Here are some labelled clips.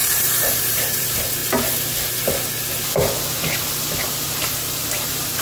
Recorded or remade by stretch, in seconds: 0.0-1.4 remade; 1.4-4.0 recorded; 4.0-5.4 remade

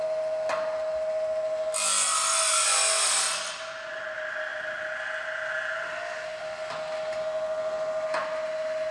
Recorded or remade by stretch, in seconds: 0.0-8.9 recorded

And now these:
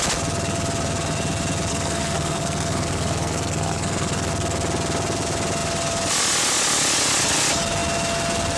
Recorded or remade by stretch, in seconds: 0.0-1.7 recorded; 1.7-4.3 remade; 4.3-8.6 recorded